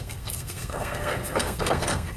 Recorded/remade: remade